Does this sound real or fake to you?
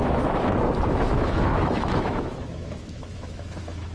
fake